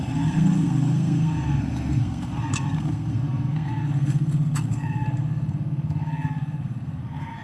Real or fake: fake